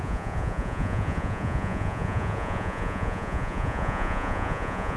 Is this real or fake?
fake